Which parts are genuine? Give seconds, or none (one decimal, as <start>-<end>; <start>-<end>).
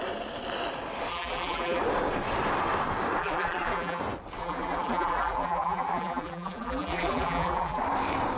0.0-1.1; 1.8-3.2; 4.0-4.4; 7.8-8.4